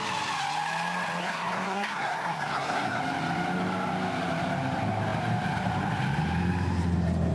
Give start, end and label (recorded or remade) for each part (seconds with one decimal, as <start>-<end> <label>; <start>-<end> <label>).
0.0-1.2 recorded; 1.2-3.0 remade; 3.0-7.3 recorded